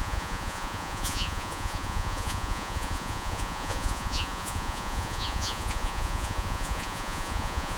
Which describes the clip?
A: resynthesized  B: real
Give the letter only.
A